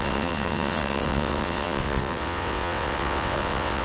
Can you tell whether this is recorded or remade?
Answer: remade